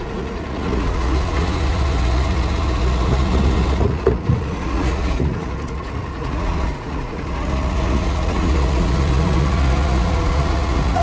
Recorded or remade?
remade